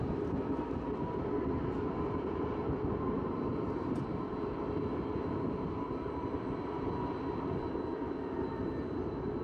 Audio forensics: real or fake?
real